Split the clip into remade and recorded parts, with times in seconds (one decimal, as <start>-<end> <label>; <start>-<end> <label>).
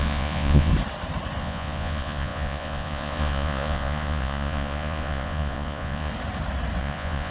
0.0-0.7 remade; 0.7-1.4 recorded; 1.4-6.1 remade; 6.1-6.8 recorded; 6.8-7.3 remade